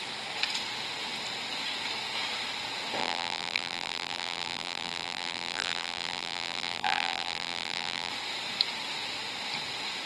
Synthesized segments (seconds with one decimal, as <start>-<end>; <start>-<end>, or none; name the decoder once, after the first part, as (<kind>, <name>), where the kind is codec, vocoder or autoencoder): 3.0-8.1 (vocoder, BigVGAN v2)